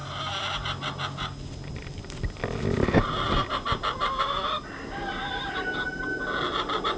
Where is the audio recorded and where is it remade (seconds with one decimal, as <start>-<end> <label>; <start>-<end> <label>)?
0.0-7.0 recorded